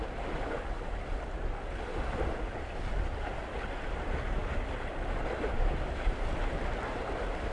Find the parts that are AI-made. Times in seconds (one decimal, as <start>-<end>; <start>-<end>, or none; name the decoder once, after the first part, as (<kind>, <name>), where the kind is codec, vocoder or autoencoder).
none